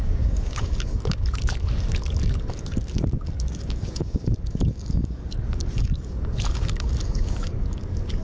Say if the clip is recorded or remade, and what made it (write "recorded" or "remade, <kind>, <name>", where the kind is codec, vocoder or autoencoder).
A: remade, codec, DAC